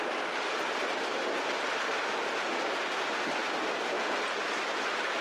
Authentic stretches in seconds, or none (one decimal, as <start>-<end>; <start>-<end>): 0.0-5.2